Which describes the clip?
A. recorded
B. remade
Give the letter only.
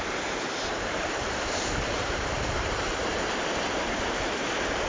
B